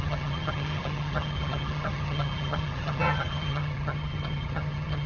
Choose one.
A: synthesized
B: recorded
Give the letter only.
A